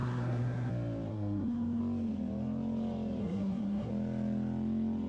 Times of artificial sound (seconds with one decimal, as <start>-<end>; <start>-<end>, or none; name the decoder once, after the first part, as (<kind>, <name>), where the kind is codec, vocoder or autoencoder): 0.0-0.7 (codec, SNAC); 1.1-1.8; 3.2-3.9